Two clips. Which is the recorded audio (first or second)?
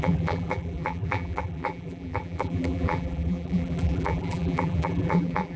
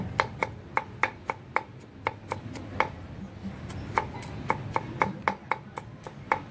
second